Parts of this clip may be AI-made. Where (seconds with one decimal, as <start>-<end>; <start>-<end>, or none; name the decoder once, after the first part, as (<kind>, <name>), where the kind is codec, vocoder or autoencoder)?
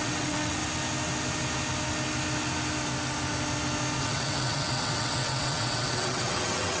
0.0-0.6 (vocoder, WaveNeXt); 4.0-6.8